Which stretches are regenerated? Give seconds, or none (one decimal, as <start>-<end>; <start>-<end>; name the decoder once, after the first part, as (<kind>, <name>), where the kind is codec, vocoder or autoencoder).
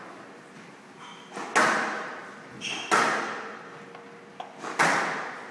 4.3-4.8 (codec, DAC)